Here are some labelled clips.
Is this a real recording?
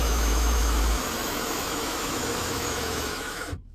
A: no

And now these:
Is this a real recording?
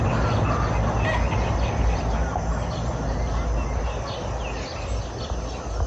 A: yes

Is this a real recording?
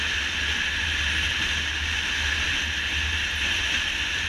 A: yes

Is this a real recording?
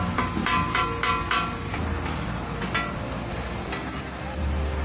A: yes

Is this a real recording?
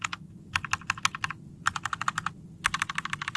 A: yes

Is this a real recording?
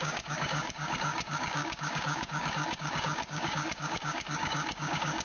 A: no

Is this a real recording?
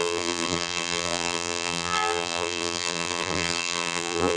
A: no